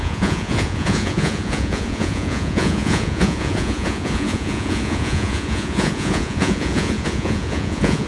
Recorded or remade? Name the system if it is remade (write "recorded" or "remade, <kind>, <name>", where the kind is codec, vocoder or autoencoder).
remade, vocoder, Vocos